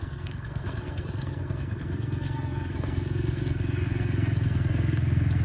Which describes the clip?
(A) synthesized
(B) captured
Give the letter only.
A